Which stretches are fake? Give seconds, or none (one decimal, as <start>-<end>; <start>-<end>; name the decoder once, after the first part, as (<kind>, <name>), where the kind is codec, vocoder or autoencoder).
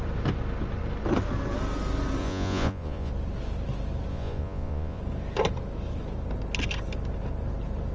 2.2-3.1 (vocoder, Vocos); 4.1-5.0